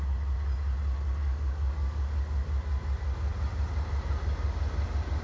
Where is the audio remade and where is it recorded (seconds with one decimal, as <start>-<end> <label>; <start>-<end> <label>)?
0.0-1.2 recorded; 1.2-2.1 remade; 2.1-5.2 recorded